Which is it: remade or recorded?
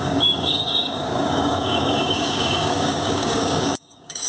remade